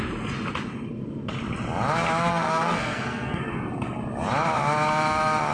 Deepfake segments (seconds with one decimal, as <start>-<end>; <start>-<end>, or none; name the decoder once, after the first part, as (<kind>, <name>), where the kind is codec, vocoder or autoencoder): 2.3-3.4 (codec, SNAC)